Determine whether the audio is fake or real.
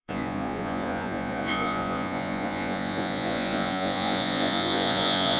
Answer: fake